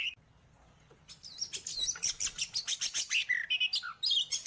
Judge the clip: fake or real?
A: real